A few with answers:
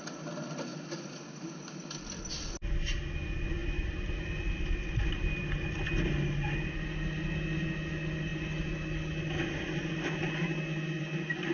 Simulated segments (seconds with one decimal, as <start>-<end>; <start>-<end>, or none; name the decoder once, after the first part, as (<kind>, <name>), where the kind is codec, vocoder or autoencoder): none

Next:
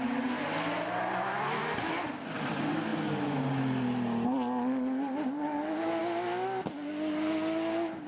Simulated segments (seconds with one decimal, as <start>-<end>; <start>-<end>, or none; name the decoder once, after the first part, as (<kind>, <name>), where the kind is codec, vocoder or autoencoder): none

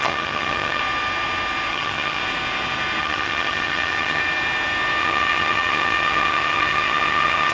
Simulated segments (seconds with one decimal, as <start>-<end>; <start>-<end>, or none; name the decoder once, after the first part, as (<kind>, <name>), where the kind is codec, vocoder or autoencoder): 0.0-0.8 (vocoder, HiFi-GAN); 1.7-2.2; 3.0-4.2; 5.0-7.5

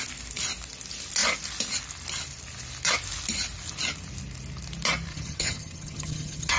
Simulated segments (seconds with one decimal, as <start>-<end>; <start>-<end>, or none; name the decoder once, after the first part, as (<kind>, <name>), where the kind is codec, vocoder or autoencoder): 5.1-6.6 (vocoder, HiFi-GAN)